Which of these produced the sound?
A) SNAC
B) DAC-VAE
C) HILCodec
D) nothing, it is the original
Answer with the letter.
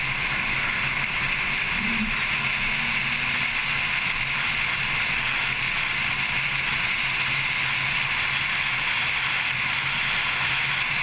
D